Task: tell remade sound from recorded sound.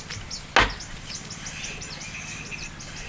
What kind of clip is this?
recorded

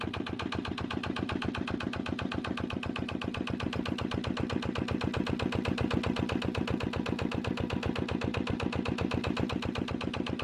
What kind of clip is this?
recorded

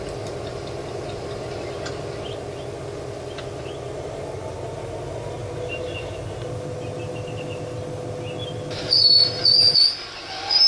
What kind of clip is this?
recorded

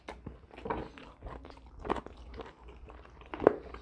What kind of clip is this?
recorded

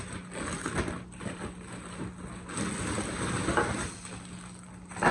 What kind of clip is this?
recorded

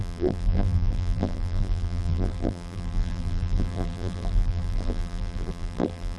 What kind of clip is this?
remade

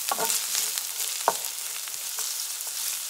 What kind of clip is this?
recorded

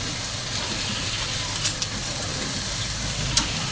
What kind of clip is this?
recorded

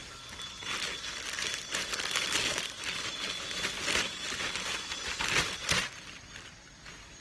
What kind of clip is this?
recorded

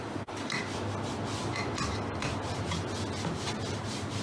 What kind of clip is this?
recorded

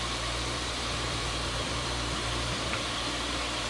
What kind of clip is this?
remade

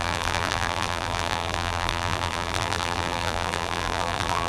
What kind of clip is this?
remade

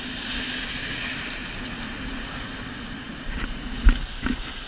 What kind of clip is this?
recorded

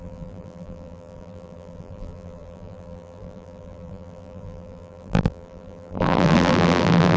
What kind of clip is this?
remade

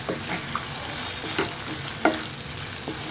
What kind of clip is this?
recorded